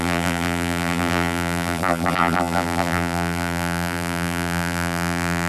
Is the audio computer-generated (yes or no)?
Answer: yes